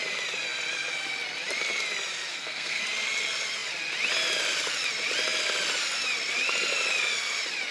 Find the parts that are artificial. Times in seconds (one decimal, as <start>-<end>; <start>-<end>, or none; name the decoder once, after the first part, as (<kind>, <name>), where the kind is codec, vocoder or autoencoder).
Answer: 2.3-2.8 (codec, SNAC)